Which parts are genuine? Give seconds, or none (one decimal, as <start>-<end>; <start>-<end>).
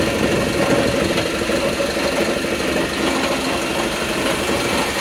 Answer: 0.0-5.0